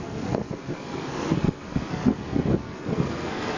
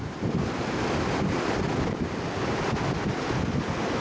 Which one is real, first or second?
second